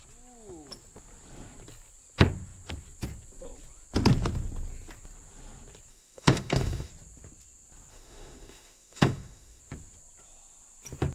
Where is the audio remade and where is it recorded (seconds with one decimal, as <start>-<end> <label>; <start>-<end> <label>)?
0.0-5.9 recorded; 5.9-6.9 remade; 6.9-7.9 recorded; 7.9-9.6 remade; 9.6-11.1 recorded